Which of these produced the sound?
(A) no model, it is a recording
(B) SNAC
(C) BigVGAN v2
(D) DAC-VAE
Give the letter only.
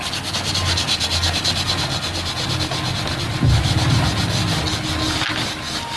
A